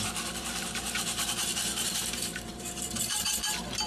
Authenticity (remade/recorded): remade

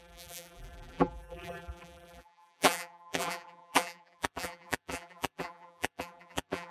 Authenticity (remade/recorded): remade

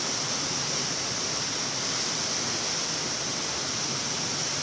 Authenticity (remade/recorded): recorded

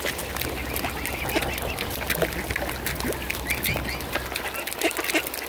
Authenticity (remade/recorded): recorded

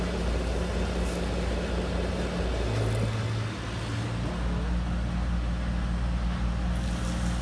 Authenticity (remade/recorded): recorded